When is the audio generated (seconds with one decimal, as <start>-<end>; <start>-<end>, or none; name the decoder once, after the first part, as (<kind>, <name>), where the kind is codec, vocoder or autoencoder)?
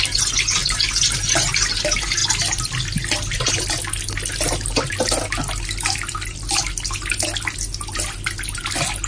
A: none